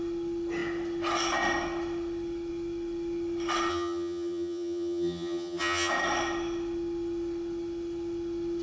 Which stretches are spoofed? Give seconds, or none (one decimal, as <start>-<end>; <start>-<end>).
3.7-5.9